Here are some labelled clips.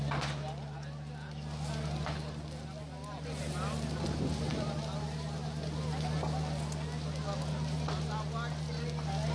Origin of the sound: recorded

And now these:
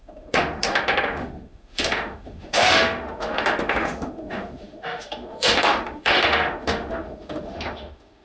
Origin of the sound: remade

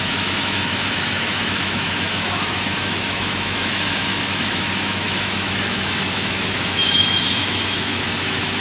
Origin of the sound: remade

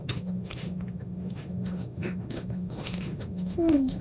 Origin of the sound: remade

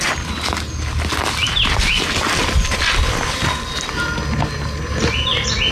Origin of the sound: recorded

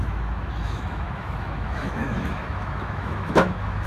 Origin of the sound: remade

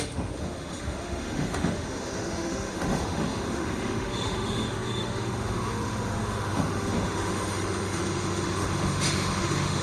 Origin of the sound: remade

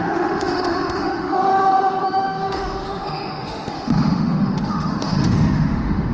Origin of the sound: remade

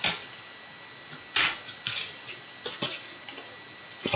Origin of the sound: recorded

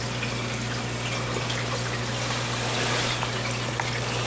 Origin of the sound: recorded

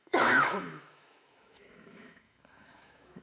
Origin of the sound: remade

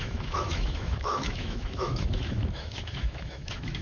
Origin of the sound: remade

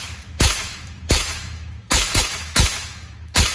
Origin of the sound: remade